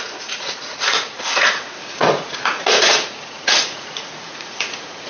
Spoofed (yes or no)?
yes